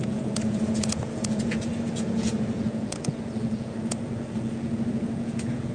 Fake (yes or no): yes